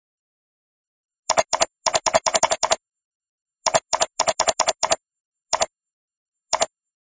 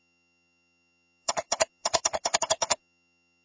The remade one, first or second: second